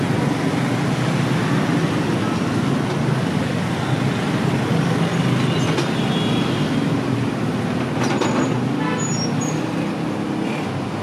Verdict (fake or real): real